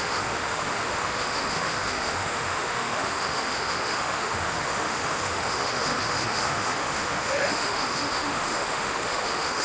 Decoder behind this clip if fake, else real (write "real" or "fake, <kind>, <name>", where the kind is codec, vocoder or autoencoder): fake, autoencoder, DAC-VAE